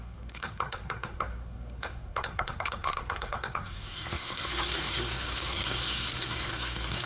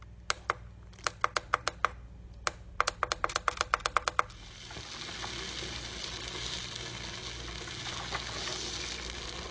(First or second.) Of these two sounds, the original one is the second